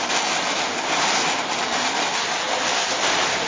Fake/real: real